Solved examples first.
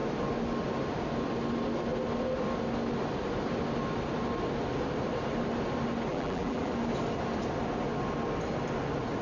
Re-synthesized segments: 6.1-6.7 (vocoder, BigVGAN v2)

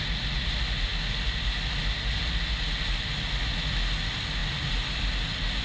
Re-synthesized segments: none